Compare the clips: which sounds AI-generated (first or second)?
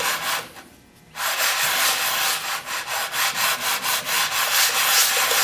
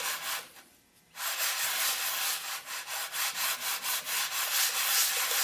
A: second